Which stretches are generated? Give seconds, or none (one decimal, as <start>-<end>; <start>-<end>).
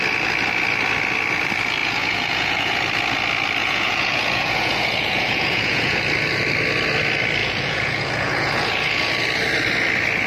1.8-2.8; 3.6-6.0; 7.4-9.1